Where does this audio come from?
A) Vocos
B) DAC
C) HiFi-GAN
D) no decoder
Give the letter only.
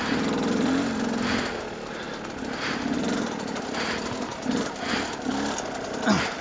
D